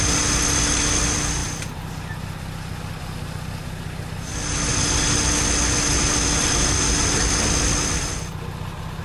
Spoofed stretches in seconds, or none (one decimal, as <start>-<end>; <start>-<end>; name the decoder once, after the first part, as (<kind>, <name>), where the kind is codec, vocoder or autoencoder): none